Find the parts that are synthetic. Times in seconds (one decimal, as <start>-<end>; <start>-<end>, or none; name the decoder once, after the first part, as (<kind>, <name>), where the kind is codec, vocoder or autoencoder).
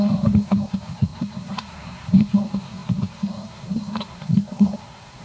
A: 0.0-5.2 (codec, SNAC)